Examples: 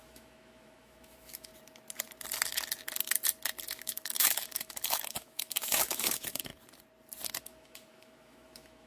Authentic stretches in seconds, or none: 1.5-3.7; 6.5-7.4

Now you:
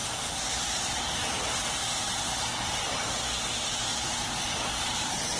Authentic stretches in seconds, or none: 1.0-3.9

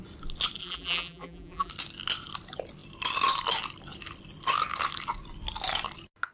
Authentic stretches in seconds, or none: 0.0-0.6; 1.7-6.3

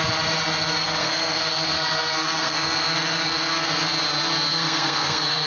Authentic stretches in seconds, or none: 0.0-1.0; 3.6-4.5